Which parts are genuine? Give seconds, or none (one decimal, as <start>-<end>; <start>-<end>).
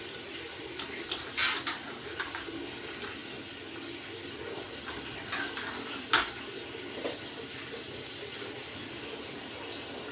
0.0-8.6; 9.4-10.1